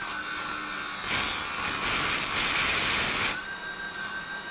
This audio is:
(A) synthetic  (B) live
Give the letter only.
B